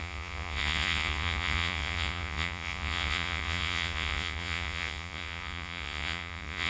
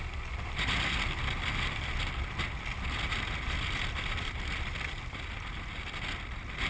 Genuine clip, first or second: second